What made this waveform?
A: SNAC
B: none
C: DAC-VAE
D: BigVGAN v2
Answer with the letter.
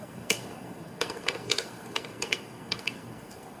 A